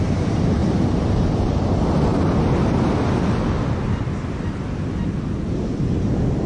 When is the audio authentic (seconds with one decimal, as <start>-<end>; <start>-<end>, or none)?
0.0-0.6; 1.2-6.5